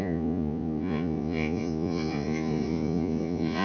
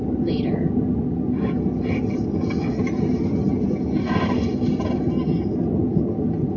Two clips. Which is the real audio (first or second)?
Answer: second